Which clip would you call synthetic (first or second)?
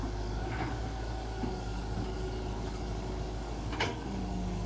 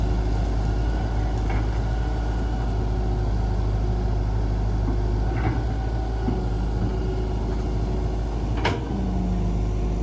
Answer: first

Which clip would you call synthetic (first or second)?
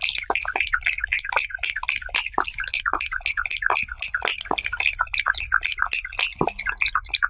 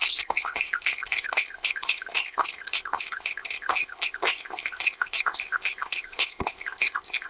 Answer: second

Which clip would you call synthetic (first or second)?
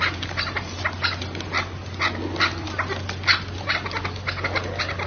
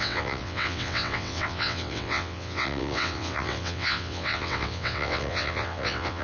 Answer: second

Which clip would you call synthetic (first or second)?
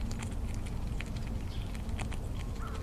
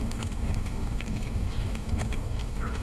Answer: second